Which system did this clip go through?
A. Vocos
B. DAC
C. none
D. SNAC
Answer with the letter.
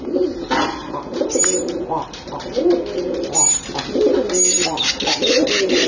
C